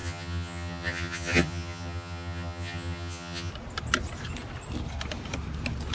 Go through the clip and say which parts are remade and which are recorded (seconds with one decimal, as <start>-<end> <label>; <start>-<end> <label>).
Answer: 0.0-3.5 remade; 3.5-5.9 recorded